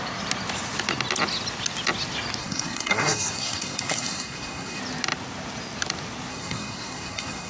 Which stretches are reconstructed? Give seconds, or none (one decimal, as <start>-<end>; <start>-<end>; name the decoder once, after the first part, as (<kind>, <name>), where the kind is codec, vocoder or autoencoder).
2.4-4.8 (codec, SNAC); 6.3-7.5